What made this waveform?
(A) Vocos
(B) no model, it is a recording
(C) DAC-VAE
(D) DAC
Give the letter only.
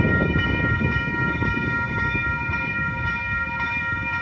D